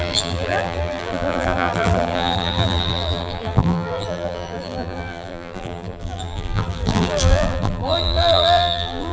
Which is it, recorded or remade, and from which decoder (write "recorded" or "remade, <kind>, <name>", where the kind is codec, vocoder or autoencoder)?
remade, vocoder, BigVGAN v2